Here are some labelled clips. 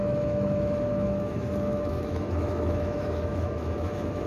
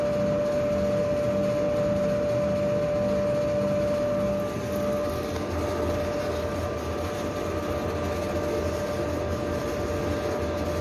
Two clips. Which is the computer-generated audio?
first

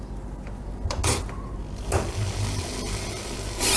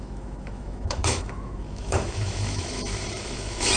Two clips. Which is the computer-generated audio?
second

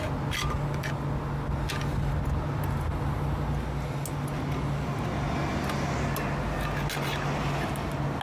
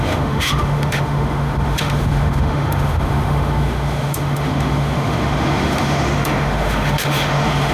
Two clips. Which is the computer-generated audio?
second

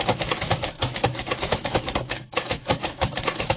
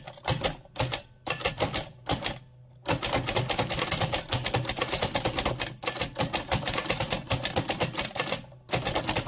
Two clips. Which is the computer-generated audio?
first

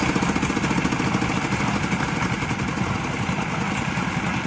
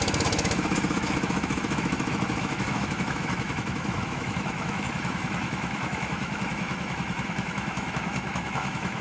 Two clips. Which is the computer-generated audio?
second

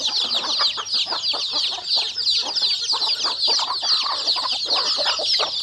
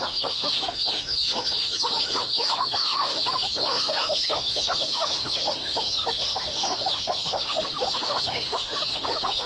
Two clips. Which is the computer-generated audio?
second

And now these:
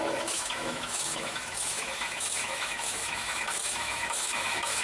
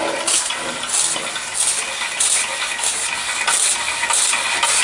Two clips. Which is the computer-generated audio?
first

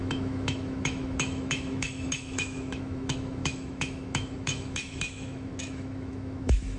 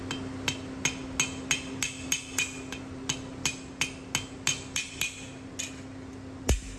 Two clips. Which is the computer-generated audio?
first